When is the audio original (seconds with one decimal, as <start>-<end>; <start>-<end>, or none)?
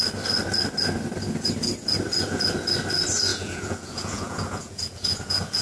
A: 0.0-3.3